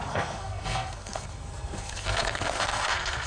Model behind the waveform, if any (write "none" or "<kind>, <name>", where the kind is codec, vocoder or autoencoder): codec, SNAC